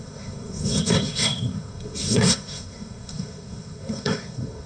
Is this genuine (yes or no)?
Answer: no